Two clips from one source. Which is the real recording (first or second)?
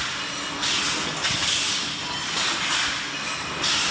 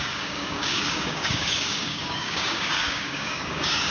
first